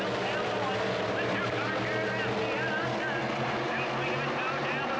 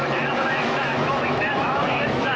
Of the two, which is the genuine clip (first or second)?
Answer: first